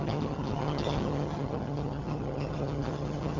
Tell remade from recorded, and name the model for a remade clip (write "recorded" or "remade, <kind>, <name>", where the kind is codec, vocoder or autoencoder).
remade, vocoder, HiFi-GAN